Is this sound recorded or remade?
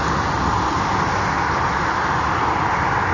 recorded